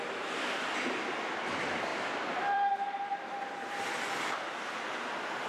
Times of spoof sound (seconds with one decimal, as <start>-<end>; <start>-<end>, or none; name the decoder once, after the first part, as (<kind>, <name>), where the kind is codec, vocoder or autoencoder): 1.9-3.8 (vocoder, BigVGAN v2)